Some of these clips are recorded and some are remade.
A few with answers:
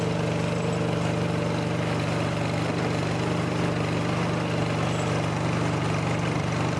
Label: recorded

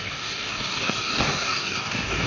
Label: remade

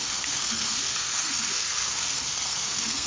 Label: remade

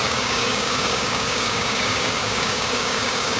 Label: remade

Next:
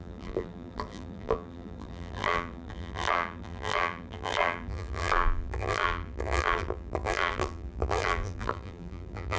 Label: remade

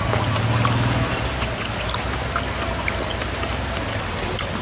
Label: recorded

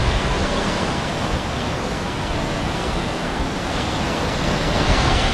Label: remade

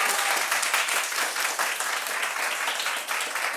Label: recorded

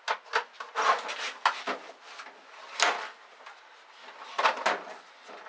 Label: recorded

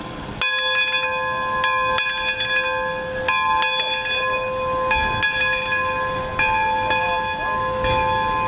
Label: recorded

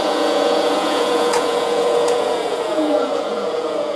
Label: remade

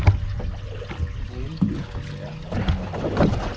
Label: recorded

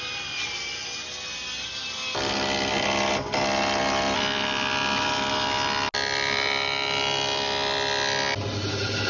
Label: recorded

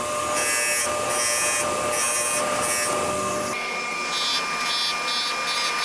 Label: recorded